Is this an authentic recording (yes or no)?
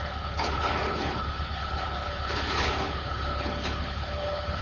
no